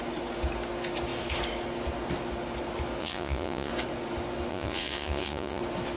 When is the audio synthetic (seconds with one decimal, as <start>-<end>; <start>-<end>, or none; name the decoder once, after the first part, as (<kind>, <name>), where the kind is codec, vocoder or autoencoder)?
3.0-3.7 (vocoder, Vocos); 4.5-5.6